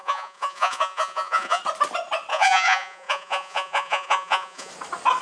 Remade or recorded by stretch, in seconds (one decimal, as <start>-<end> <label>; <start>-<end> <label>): 0.0-1.6 remade; 1.6-2.3 recorded; 2.3-4.7 remade; 4.7-5.2 recorded